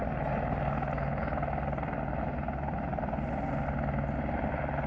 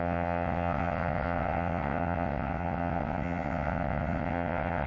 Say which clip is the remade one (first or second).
second